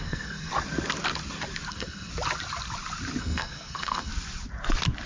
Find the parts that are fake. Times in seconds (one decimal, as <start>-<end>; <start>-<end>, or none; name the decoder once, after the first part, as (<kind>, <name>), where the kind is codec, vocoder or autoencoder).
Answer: 0.0-0.5 (codec, SNAC); 1.7-2.1; 3.2-4.1